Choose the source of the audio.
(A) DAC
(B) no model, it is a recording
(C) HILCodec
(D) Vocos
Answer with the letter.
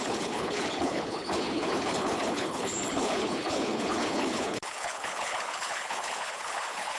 C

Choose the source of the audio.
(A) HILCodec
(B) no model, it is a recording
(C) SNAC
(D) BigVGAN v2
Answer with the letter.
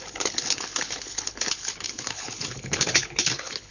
A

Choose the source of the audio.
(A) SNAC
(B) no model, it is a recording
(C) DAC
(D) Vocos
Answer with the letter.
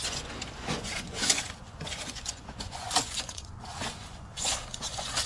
D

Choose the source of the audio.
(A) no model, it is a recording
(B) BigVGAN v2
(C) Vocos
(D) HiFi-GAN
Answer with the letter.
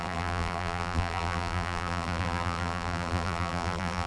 B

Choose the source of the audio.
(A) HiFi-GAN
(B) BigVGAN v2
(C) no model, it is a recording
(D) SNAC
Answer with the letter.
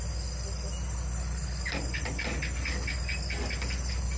C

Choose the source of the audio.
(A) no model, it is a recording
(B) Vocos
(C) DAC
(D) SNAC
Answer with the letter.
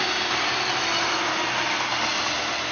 A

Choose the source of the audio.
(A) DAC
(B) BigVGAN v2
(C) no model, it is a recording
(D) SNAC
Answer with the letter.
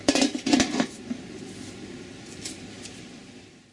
B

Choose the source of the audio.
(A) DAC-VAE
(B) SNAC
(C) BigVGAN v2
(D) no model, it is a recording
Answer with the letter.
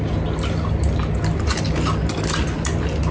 D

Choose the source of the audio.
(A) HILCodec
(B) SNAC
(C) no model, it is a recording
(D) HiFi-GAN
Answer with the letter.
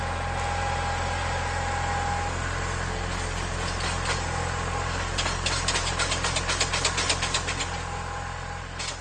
C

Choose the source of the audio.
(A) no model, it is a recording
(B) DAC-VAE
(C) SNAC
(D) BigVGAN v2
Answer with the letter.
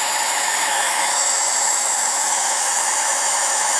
B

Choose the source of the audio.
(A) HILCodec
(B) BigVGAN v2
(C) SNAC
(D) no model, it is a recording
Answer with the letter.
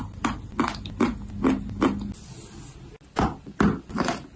D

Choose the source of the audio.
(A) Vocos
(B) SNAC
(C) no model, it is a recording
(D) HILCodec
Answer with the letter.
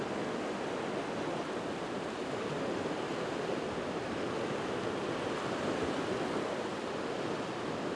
C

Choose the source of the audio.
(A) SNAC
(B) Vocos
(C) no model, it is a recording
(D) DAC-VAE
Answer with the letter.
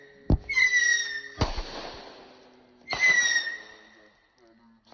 C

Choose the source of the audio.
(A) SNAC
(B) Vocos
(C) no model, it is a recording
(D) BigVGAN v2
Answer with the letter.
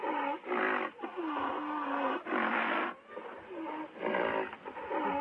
C